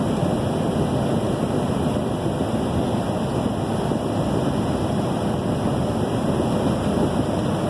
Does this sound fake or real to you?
real